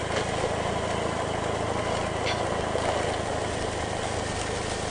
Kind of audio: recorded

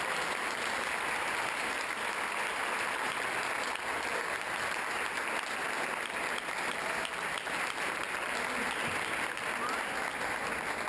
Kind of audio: recorded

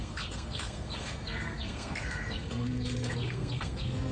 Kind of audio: remade